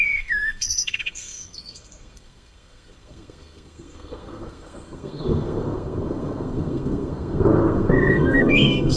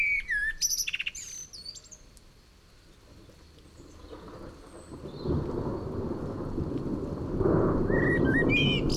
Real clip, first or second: second